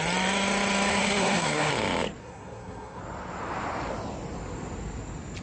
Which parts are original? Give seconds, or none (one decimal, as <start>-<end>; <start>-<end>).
0.0-0.9; 1.7-2.2; 3.0-5.4